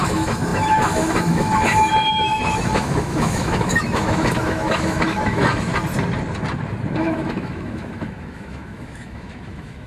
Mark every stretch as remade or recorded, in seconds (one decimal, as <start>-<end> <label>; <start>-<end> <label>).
0.0-5.7 remade; 5.7-7.0 recorded; 7.0-9.9 remade